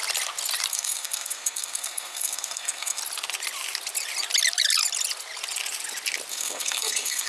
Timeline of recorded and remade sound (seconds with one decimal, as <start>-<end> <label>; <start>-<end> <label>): 0.0-0.7 recorded; 0.7-3.0 remade; 3.0-6.3 recorded; 6.3-7.3 remade